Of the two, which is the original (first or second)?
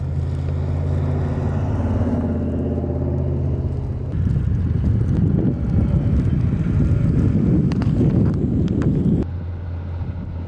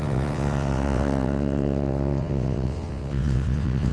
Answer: first